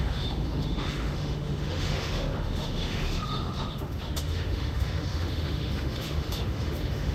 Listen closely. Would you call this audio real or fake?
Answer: fake